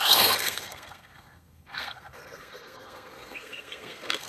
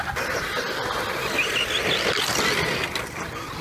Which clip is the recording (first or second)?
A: second